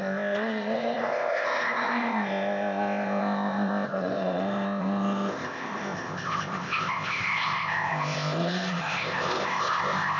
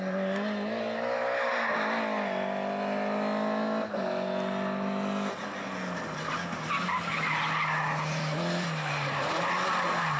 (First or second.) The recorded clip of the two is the second